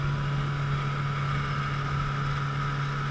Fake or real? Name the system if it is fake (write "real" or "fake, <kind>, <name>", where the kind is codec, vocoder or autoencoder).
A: real